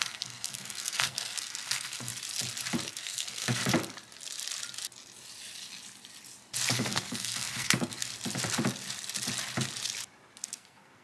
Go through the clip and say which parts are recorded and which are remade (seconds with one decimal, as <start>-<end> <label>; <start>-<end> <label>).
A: 0.0-2.1 remade; 2.1-2.9 recorded; 2.9-3.6 remade; 3.6-6.7 recorded; 6.7-8.1 remade; 8.1-10.4 recorded; 10.4-11.0 remade